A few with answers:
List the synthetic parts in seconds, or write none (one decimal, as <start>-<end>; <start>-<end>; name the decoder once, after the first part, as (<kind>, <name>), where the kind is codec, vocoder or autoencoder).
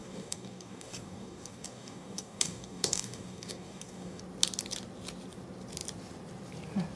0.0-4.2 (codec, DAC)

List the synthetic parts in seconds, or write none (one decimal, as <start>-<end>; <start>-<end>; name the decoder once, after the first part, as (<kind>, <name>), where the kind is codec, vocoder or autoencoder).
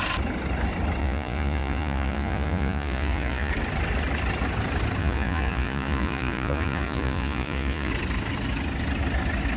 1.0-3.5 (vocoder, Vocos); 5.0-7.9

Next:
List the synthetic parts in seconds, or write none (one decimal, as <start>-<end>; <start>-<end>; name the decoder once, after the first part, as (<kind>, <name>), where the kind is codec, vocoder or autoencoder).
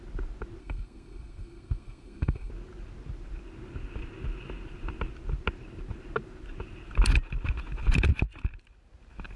0.6-2.5 (codec, SNAC)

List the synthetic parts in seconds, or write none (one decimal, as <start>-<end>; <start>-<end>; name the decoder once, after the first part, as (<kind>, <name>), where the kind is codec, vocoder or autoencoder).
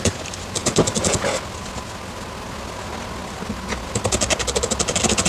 none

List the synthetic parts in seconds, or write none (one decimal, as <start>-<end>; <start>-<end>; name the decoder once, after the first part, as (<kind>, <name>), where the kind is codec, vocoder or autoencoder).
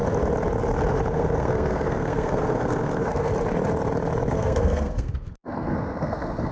1.1-3.3 (codec, SNAC); 4.3-6.5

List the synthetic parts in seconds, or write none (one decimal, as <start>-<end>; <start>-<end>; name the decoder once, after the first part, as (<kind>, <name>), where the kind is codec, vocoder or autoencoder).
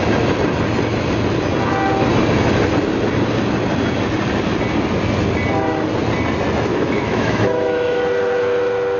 6.7-8.0 (autoencoder, DAC-VAE)